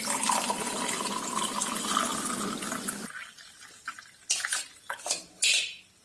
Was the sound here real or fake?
real